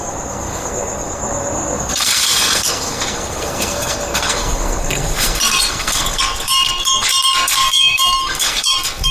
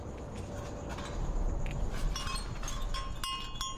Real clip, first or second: second